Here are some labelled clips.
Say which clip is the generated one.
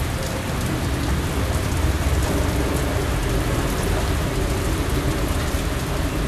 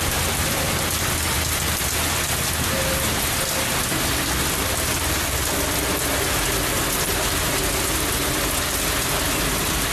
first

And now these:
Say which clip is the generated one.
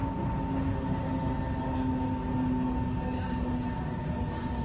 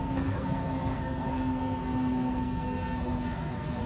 second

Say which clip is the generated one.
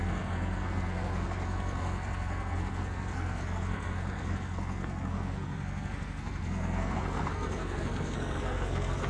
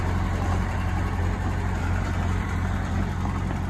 first